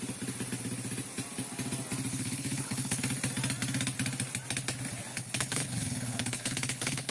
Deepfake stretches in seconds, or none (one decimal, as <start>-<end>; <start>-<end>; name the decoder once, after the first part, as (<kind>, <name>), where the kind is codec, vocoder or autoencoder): 2.1-3.0 (codec, HILCodec); 5.1-7.1